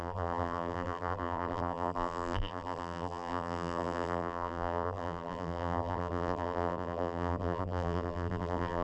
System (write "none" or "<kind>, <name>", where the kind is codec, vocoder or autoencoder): vocoder, BigVGAN v2